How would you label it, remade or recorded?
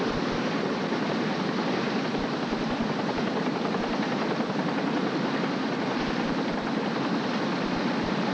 remade